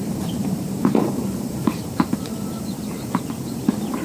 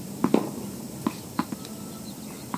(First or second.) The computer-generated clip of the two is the first